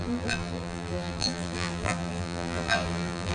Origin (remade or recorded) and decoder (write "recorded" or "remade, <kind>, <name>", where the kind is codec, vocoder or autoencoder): remade, vocoder, BigVGAN v2